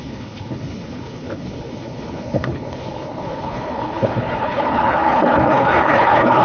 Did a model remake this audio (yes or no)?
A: yes